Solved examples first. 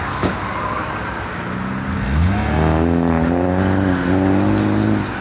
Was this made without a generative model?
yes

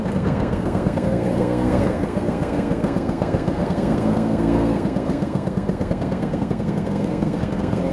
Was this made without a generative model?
no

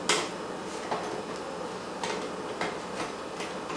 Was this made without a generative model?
yes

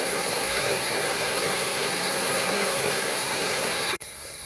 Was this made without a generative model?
no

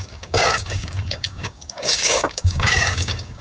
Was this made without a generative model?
no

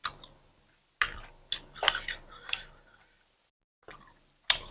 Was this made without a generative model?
yes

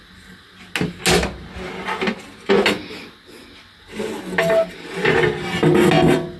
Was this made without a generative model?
yes